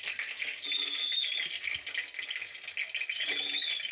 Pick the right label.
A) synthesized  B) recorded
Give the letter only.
B